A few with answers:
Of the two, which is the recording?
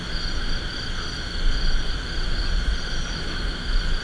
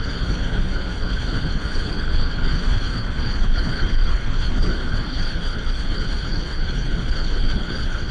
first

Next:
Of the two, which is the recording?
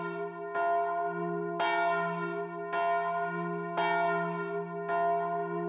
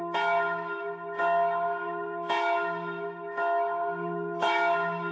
first